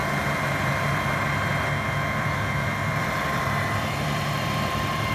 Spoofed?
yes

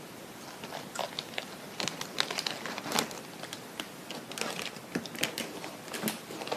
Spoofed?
no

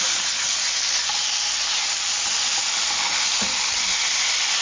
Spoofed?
no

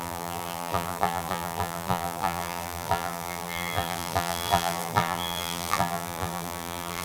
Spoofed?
yes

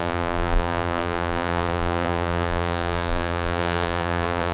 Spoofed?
yes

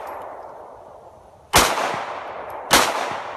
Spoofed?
no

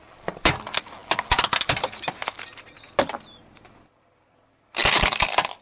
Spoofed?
no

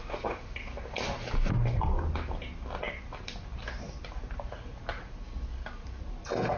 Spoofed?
no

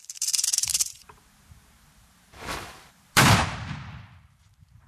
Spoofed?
yes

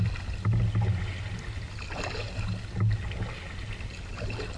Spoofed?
no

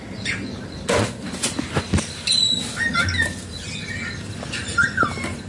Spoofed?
no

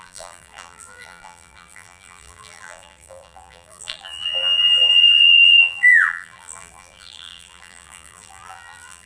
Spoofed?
yes